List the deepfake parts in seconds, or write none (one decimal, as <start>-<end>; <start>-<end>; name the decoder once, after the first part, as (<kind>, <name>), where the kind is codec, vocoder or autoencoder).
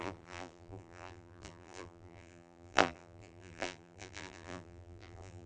0.0-5.5 (vocoder, BigVGAN v2)